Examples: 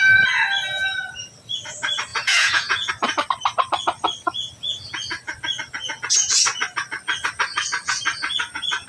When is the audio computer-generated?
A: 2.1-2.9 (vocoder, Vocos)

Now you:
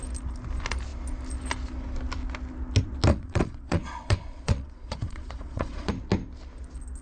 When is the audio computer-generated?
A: 3.1-5.9 (vocoder, Vocos)

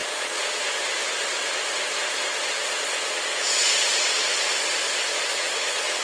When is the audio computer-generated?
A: 0.0-0.6 (vocoder, Vocos); 2.6-4.5; 5.1-6.0

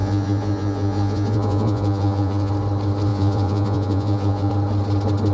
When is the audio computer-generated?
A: 0.0-2.5 (vocoder, Vocos); 3.1-4.5

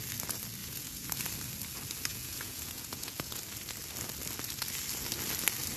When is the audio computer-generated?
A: 0.6-1.1 (vocoder, Vocos); 2.1-3.4

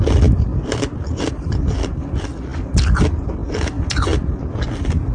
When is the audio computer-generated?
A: none